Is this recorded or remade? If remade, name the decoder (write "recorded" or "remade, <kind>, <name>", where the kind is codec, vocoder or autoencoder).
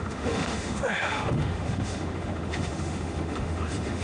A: remade, autoencoder, DAC-VAE